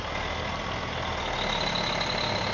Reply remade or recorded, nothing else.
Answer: recorded